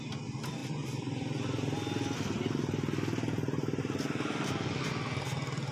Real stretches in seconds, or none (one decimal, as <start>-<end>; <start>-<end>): 0.0-5.7